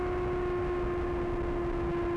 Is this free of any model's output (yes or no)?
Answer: yes